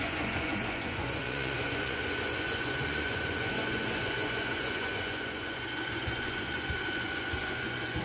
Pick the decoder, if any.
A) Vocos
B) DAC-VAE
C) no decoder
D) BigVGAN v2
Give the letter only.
A